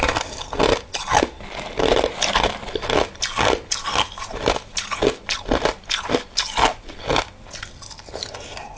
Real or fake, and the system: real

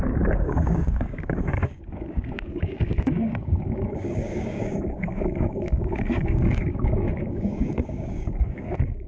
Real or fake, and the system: fake, codec, DAC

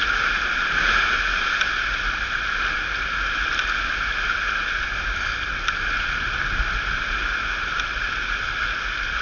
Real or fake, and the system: real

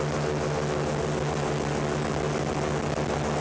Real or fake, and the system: real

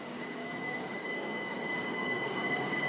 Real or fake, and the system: fake, codec, DAC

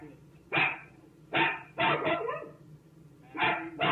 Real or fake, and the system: real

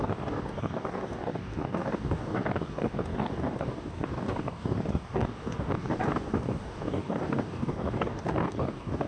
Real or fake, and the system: fake, codec, DAC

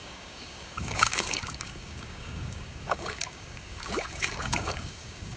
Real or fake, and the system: fake, codec, DAC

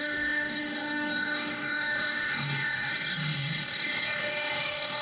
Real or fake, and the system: fake, codec, DAC